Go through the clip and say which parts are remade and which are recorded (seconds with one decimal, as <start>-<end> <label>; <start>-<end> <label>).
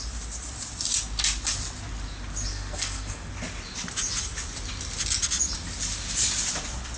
0.0-2.5 recorded; 2.5-3.3 remade; 3.3-7.0 recorded